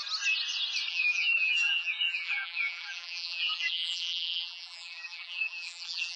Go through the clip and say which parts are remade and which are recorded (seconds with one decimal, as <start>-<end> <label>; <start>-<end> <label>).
0.0-0.9 recorded; 0.9-6.2 remade